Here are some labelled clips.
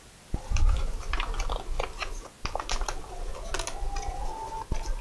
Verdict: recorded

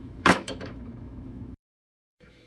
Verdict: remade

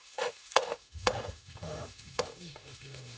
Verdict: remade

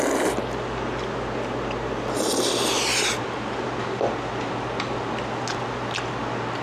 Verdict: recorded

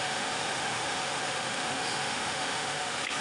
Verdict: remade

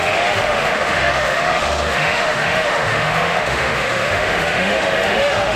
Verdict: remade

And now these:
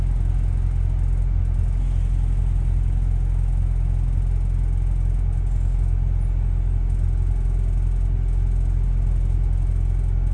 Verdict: recorded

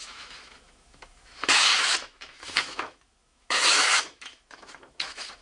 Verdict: remade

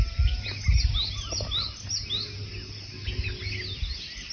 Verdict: recorded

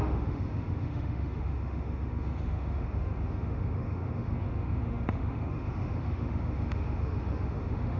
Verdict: remade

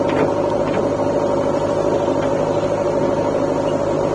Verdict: recorded